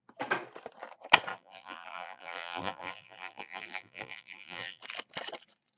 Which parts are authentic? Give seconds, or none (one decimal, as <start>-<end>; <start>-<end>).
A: 0.0-1.3; 4.8-5.8